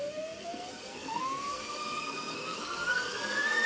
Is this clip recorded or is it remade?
remade